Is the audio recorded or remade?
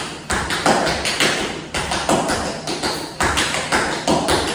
recorded